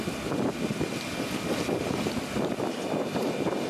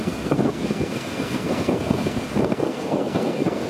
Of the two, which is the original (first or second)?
first